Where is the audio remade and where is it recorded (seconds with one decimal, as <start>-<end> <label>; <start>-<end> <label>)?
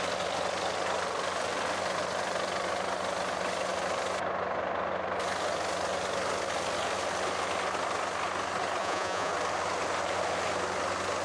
0.0-8.8 recorded; 8.8-9.3 remade; 9.3-11.2 recorded